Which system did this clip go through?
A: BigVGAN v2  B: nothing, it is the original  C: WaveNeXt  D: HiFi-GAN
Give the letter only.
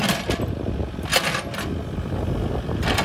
B